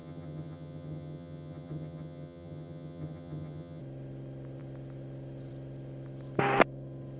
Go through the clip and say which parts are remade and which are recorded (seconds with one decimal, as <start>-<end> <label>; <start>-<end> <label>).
0.0-3.8 remade; 3.8-7.2 recorded

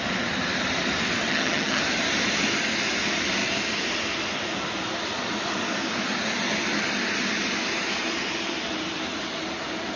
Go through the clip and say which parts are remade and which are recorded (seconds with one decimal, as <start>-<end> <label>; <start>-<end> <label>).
0.0-1.3 recorded; 1.3-1.8 remade; 1.8-10.0 recorded